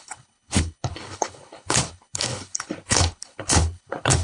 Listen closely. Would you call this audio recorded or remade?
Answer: remade